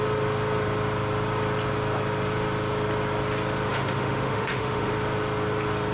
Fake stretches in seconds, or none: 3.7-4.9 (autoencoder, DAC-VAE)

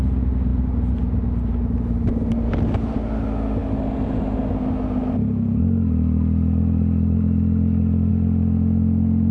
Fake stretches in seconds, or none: none

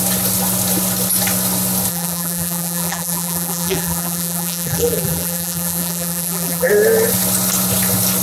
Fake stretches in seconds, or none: 1.9-6.7 (vocoder, BigVGAN v2)

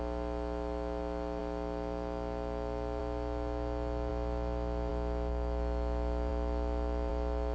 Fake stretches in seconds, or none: none

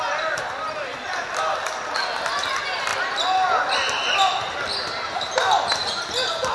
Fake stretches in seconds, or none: none

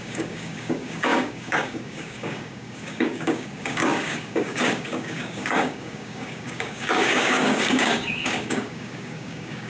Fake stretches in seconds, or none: 0.0-9.7 (codec, DAC)